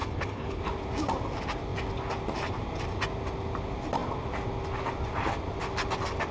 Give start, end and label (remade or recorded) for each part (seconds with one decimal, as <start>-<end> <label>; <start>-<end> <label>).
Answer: 0.0-0.6 remade; 0.6-6.3 recorded